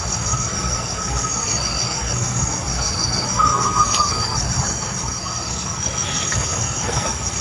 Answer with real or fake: fake